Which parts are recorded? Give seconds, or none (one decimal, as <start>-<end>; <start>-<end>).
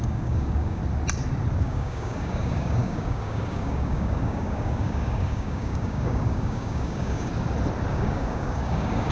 0.8-1.6; 7.3-7.9